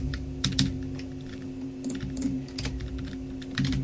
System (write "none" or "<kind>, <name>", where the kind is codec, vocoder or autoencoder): vocoder, BigVGAN v2